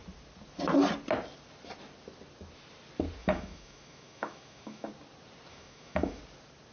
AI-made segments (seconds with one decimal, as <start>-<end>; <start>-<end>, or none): 3.2-4.9; 5.5-6.2